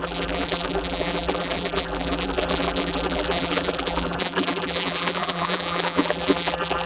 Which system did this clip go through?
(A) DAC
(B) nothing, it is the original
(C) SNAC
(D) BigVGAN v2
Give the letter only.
D